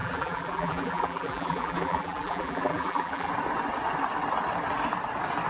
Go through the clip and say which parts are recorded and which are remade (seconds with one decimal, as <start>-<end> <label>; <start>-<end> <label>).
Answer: 0.0-3.3 remade; 3.3-5.5 recorded